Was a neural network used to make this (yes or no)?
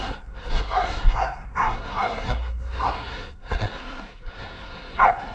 yes